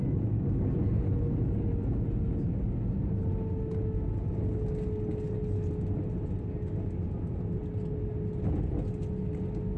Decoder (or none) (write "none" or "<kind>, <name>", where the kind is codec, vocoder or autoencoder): none